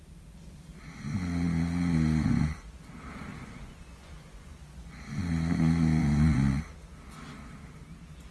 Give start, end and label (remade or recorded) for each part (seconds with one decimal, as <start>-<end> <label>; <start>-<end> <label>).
0.0-3.3 recorded; 3.3-5.0 remade; 5.0-6.0 recorded; 6.0-6.6 remade; 6.6-8.3 recorded